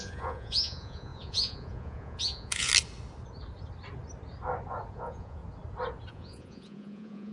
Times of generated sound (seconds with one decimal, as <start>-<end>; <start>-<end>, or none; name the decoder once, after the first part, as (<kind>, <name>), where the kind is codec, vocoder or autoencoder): 0.0-2.7 (vocoder, Vocos); 4.9-5.4; 6.1-7.3